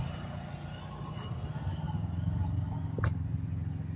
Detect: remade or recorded recorded